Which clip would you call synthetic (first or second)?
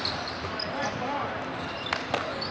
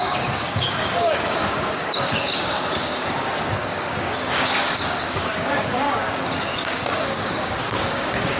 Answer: second